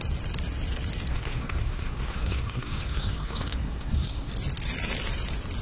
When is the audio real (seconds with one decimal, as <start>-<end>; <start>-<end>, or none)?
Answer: 0.0-1.1; 4.3-5.6